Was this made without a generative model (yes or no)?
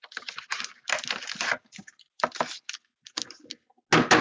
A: yes